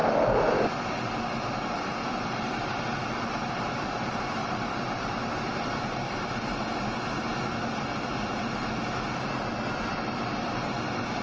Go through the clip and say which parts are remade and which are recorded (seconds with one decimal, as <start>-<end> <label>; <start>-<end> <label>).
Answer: 0.0-0.6 remade; 0.6-2.0 recorded; 2.0-2.8 remade; 2.8-4.4 recorded; 4.4-6.6 remade; 6.6-11.2 recorded